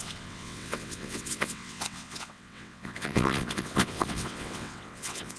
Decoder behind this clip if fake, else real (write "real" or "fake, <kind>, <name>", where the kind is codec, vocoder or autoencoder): fake, vocoder, WaveNeXt